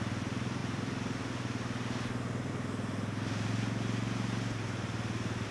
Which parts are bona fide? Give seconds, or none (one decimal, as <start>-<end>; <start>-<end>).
0.0-0.6; 1.2-5.5